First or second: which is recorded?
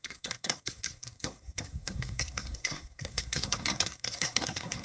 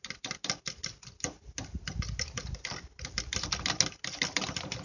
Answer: second